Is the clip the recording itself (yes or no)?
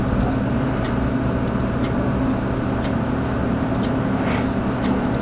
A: yes